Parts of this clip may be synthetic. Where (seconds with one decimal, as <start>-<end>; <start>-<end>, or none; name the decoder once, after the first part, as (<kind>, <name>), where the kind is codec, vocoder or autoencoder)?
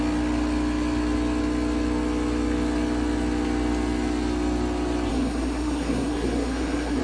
5.1-7.0 (codec, SNAC)